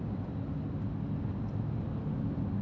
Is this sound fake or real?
real